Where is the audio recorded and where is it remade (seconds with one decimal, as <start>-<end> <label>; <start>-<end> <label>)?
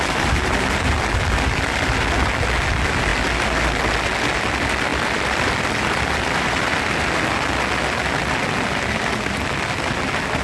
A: 0.0-4.9 recorded; 4.9-7.0 remade; 7.0-10.4 recorded